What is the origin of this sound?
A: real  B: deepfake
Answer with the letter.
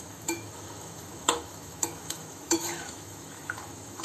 B